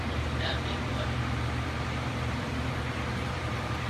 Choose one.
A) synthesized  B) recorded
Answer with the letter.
A